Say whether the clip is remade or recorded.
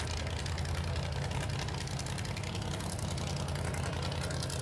recorded